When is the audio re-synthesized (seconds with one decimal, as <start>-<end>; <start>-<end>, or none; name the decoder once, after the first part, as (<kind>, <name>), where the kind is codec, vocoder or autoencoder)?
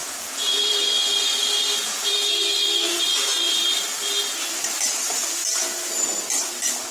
0.0-3.6 (vocoder, Vocos)